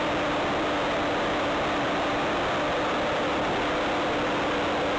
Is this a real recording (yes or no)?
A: yes